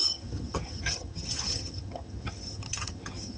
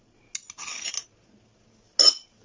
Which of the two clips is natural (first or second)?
second